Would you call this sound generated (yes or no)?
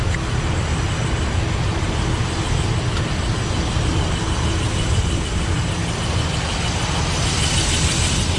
no